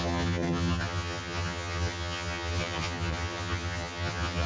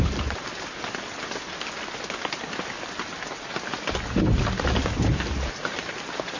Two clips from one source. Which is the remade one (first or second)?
first